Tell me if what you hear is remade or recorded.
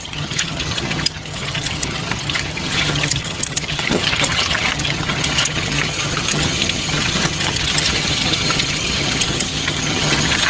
remade